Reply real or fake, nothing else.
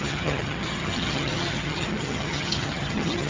fake